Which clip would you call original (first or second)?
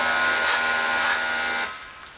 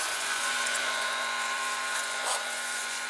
first